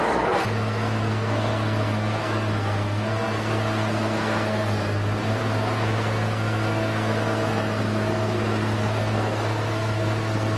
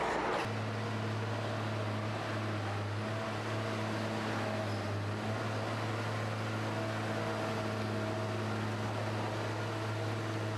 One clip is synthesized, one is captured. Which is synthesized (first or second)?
first